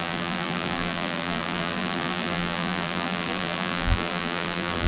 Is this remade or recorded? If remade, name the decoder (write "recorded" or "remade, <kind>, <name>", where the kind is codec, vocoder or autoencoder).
remade, vocoder, BigVGAN v2